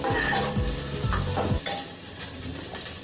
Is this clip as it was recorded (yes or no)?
no